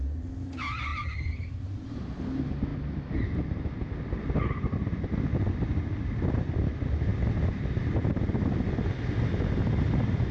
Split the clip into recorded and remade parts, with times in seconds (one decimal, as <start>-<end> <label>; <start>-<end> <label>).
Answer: 0.0-0.9 recorded; 0.9-1.6 remade; 1.6-10.3 recorded